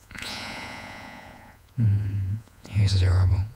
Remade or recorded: remade